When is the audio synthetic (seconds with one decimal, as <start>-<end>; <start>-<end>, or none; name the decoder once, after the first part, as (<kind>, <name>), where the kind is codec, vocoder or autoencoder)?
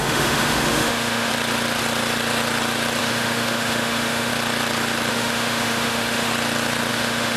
0.0-1.3 (autoencoder, DAC-VAE); 3.0-4.3; 5.1-6.3; 6.9-7.4